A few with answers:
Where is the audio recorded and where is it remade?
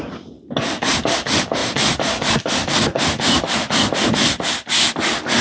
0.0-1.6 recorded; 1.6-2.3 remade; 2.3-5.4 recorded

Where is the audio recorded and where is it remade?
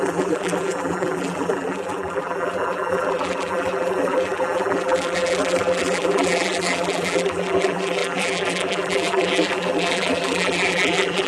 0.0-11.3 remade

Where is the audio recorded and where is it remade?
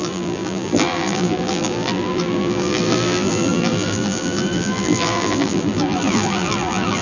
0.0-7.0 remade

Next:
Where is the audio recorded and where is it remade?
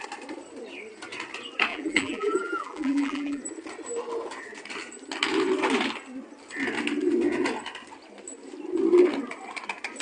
0.0-1.7 recorded; 1.7-3.4 remade; 3.4-10.0 recorded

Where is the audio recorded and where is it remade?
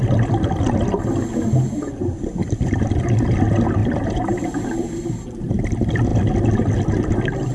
0.0-3.8 recorded; 3.8-4.7 remade; 4.7-7.5 recorded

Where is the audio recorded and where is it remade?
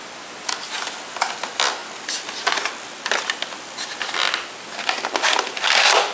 0.0-6.1 recorded